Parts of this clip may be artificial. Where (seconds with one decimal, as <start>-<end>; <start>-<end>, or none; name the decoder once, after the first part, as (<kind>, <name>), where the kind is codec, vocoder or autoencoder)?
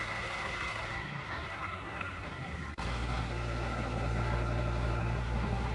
0.0-5.7 (codec, SNAC)